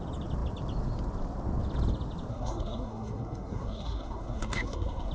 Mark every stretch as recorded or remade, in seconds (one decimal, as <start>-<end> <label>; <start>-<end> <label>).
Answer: 0.0-2.3 recorded; 2.3-5.1 remade